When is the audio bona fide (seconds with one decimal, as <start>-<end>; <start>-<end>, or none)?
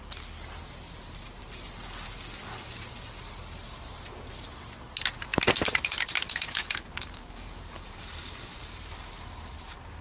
0.0-5.3; 8.9-10.0